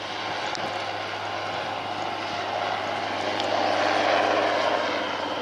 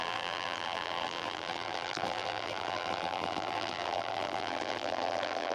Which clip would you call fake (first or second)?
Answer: second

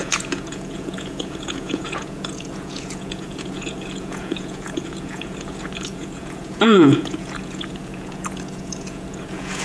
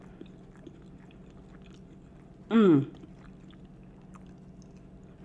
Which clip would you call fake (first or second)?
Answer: first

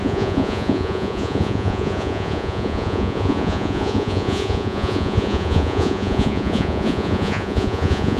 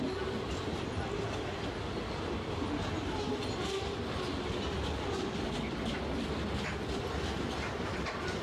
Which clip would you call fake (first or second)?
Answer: first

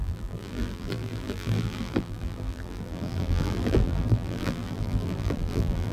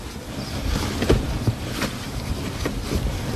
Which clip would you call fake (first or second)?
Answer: first